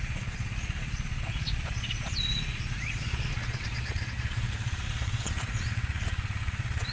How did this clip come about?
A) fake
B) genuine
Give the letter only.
A